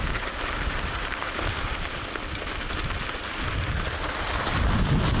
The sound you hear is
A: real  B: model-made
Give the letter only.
A